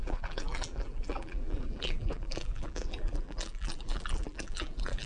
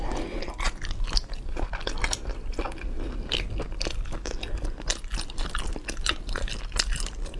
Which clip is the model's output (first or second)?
first